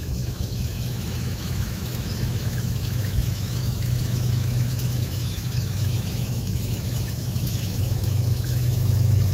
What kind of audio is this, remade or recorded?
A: remade